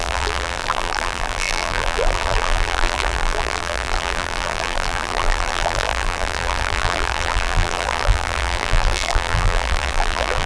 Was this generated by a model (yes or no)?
yes